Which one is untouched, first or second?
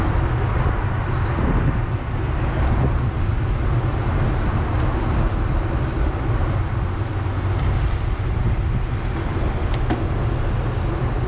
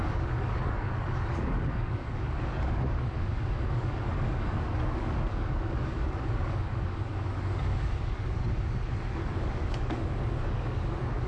first